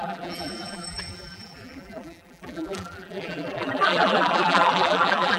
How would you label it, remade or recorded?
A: remade